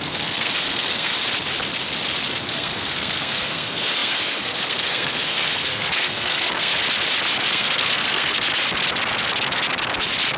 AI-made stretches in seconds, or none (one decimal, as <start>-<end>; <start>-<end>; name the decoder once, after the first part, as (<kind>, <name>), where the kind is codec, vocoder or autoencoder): 0.0-1.1 (codec, SNAC); 2.4-6.7; 7.4-8.5